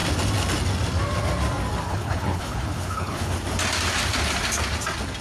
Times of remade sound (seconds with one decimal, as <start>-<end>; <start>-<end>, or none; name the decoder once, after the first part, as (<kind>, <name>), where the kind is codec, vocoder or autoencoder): 1.9-3.4 (codec, HILCodec)